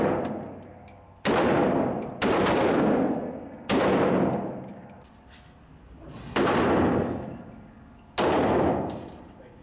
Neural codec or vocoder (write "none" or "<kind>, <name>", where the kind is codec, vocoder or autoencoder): none